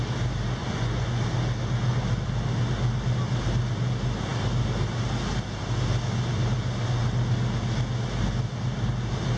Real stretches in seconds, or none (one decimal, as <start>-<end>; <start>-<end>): 0.0-0.6; 1.2-9.4